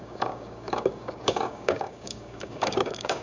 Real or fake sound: fake